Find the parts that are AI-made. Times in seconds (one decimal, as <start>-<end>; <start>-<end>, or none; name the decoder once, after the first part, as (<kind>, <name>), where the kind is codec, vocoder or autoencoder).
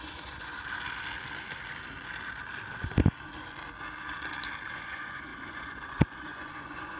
0.0-0.5 (vocoder, Vocos); 4.7-7.0